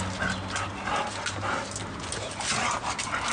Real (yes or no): yes